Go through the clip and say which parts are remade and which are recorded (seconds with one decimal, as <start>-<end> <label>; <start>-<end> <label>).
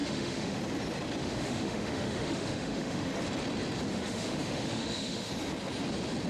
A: 0.0-0.6 remade; 0.6-1.2 recorded; 1.2-3.1 remade; 3.1-3.9 recorded; 3.9-5.3 remade; 5.3-6.3 recorded